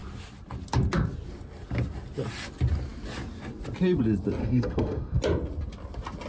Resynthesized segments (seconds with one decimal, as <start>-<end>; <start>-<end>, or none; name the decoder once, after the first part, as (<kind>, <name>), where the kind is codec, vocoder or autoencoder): 4.4-5.2 (codec, SNAC)